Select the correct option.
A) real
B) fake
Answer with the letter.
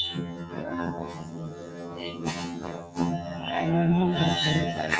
B